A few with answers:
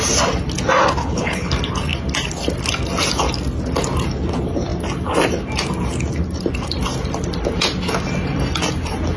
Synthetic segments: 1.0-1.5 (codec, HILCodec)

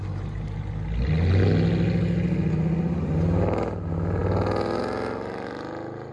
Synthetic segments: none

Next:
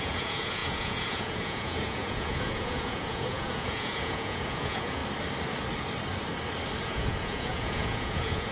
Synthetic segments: 0.0-5.0 (vocoder, Vocos); 6.8-8.5